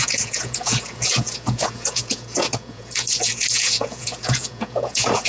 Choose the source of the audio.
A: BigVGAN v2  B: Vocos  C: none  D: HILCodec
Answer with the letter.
B